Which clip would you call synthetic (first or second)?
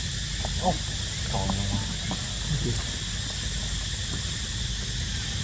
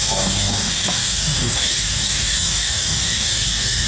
second